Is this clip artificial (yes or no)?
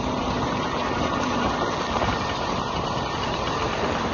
no